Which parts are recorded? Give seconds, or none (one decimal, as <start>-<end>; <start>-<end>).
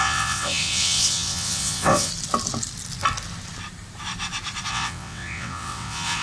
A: 2.1-4.7